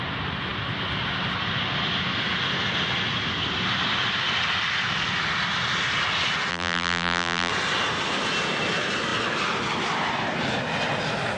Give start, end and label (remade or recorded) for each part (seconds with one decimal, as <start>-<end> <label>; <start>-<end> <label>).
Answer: 0.0-6.5 recorded; 6.5-7.5 remade; 7.5-11.4 recorded